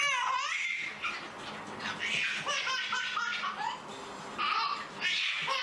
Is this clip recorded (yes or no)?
yes